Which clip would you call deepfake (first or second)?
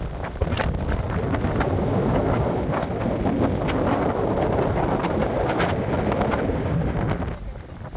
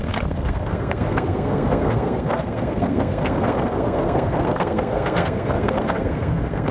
second